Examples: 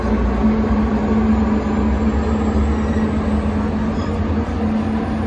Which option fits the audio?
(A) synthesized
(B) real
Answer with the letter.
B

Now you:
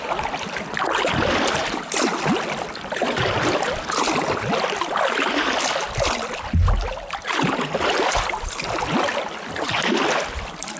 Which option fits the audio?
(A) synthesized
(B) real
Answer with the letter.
B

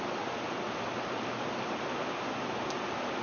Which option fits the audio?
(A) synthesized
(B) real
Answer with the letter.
B